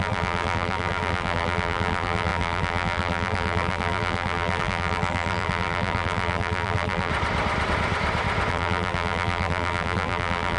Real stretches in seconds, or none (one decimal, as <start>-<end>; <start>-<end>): 7.1-8.5